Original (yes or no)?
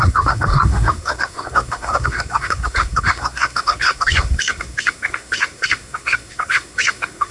no